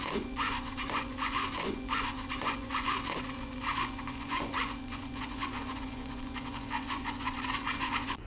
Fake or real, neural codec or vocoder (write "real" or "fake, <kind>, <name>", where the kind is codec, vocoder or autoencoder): fake, vocoder, Vocos